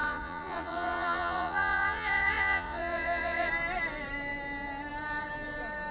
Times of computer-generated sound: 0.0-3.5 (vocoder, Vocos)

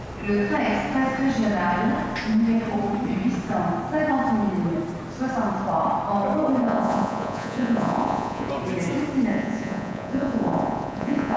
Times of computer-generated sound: 6.6-8.5 (vocoder, Vocos); 9.3-11.4

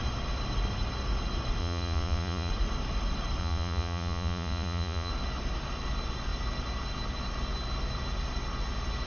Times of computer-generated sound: 1.6-2.5 (vocoder, Vocos); 3.4-5.1